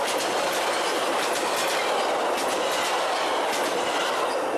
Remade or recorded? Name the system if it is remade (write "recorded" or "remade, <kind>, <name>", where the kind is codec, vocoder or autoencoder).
recorded